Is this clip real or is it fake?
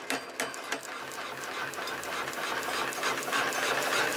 real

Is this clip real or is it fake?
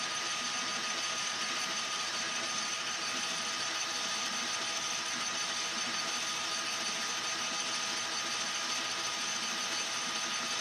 real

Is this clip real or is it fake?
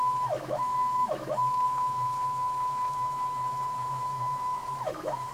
fake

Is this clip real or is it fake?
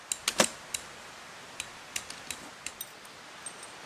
real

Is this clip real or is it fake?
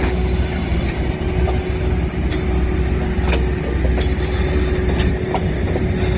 real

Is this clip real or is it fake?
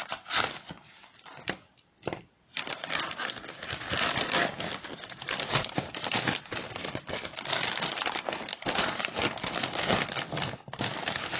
real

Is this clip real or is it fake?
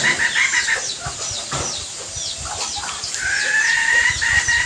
real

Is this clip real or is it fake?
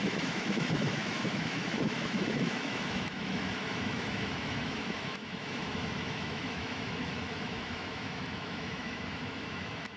fake